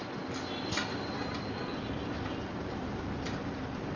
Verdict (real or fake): real